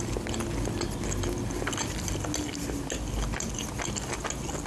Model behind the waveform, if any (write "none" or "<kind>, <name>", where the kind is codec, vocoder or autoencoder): none